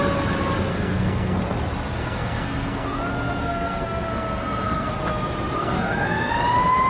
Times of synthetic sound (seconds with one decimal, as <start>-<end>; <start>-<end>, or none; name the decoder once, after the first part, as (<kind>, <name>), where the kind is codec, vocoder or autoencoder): 0.7-1.4 (codec, SNAC); 2.0-3.0; 3.4-4.9; 5.6-6.3